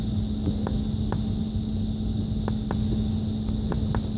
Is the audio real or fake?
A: real